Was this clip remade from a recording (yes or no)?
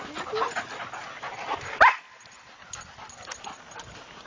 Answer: no